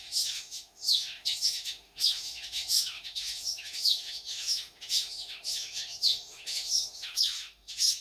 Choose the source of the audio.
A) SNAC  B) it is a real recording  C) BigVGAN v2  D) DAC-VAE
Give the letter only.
D